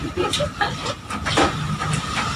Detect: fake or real real